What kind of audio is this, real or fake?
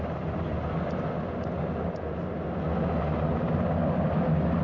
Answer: real